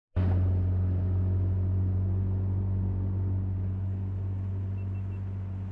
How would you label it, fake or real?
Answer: real